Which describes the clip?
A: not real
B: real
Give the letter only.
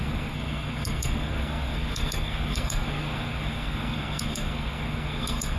A